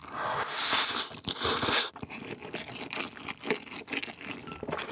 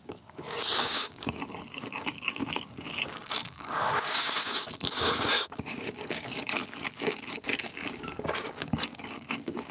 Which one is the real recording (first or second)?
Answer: first